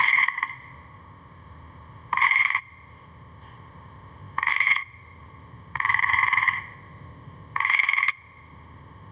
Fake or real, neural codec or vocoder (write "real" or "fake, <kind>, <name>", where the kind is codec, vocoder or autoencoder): fake, codec, ZipCodec